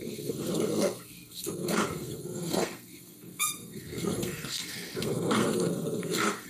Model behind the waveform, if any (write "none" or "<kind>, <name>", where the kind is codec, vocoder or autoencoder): codec, SNAC